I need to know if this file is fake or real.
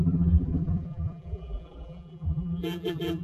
fake